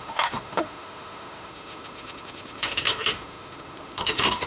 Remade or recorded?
remade